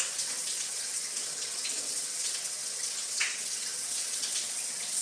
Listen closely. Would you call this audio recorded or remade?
remade